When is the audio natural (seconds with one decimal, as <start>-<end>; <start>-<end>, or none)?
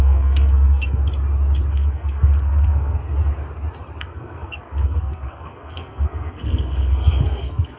1.0-1.7; 3.0-4.0